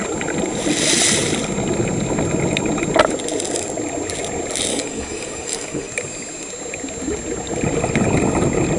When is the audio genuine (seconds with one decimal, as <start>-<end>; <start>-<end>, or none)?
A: 0.0-4.7; 5.9-8.8